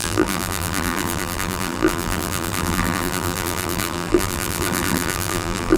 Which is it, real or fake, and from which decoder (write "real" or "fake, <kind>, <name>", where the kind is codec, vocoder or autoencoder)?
fake, vocoder, BigVGAN v2